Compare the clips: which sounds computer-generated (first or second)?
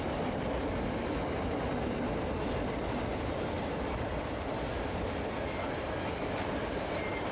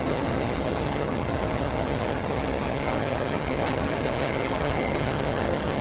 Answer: second